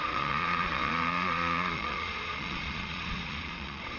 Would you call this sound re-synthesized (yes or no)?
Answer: yes